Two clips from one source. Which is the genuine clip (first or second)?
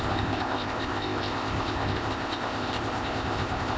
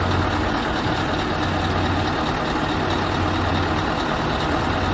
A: second